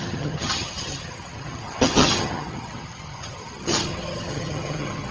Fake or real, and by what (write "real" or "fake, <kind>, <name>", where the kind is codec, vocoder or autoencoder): fake, vocoder, HiFi-GAN